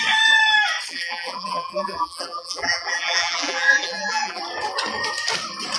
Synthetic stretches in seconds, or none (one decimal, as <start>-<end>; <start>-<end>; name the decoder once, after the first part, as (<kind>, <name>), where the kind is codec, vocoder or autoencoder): 0.9-4.4 (vocoder, BigVGAN v2)